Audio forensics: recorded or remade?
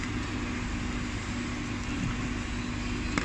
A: recorded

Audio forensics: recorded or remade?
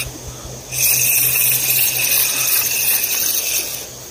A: recorded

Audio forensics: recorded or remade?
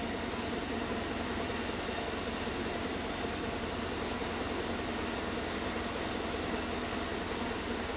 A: recorded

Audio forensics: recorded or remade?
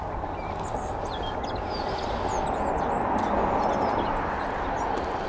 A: recorded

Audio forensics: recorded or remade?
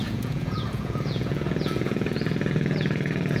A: remade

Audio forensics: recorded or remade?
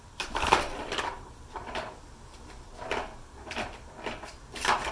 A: remade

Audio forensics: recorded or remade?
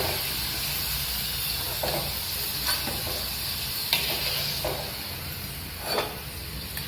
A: recorded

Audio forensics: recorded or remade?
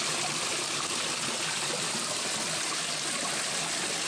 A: recorded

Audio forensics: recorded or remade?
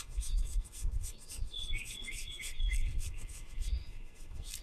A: remade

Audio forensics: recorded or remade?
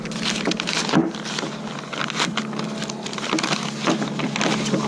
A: recorded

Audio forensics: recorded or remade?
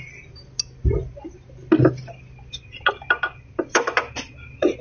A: recorded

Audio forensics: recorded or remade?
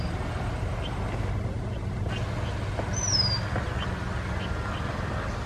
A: recorded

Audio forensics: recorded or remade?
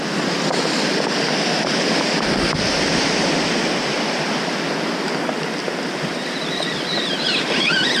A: recorded